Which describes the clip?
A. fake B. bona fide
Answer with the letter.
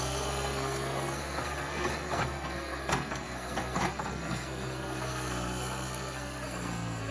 A